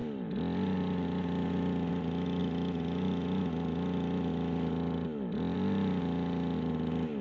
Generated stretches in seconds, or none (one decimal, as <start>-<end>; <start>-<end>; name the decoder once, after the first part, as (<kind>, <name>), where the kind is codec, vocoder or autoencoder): none